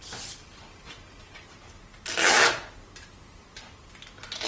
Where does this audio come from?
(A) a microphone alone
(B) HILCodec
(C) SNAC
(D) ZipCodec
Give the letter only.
A